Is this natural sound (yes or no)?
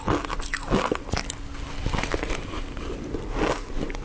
yes